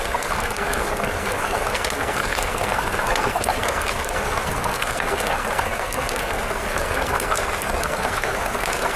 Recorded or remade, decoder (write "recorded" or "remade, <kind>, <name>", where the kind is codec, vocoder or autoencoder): remade, codec, SNAC